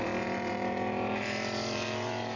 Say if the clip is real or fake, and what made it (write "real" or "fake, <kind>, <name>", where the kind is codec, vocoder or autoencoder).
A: fake, vocoder, BigVGAN v2